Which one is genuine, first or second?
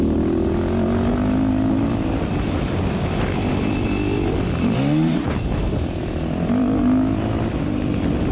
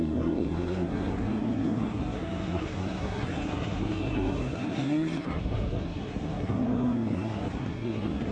first